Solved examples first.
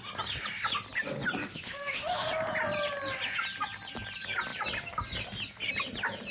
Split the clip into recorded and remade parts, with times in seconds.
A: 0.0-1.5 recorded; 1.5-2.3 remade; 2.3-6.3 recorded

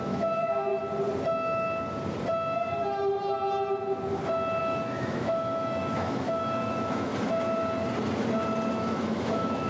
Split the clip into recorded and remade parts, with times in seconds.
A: 0.0-0.7 remade; 0.7-4.6 recorded; 4.6-7.1 remade; 7.1-8.7 recorded; 8.7-9.7 remade

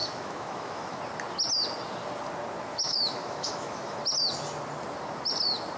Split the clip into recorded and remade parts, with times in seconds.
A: 0.0-1.0 remade; 1.0-2.7 recorded; 2.7-4.0 remade; 4.0-5.8 recorded

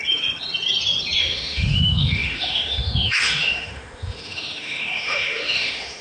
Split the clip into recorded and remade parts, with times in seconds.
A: 0.0-1.2 recorded; 1.2-6.0 remade

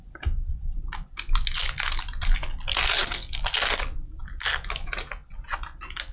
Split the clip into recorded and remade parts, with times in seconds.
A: 0.0-6.1 recorded

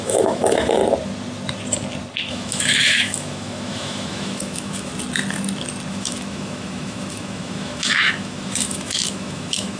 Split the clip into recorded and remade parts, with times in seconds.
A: 0.0-0.8 remade; 0.8-2.3 recorded; 2.3-4.9 remade; 4.9-5.9 recorded; 5.9-9.8 remade

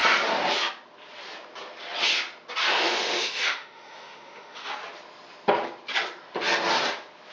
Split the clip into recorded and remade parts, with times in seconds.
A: 0.0-2.7 recorded; 2.7-4.7 remade; 4.7-7.3 recorded

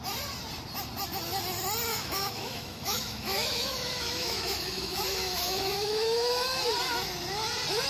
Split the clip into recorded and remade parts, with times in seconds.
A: 0.0-1.9 recorded; 1.9-6.6 remade; 6.6-7.9 recorded